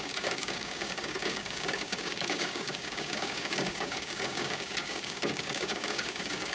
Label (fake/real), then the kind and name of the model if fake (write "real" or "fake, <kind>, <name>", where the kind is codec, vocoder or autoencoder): fake, codec, DAC